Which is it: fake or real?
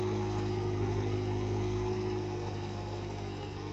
fake